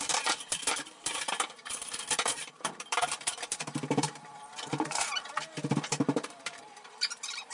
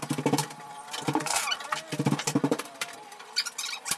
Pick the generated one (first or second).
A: first